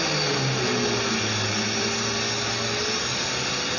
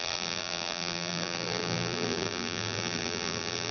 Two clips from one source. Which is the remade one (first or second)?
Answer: second